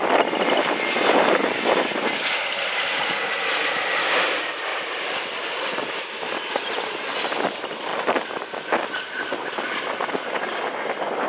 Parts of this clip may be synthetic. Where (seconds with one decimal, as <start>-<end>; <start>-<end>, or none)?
4.7-6.5; 7.9-8.6